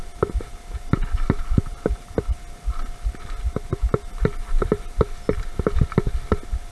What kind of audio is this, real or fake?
real